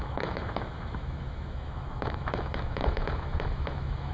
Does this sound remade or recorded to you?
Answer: remade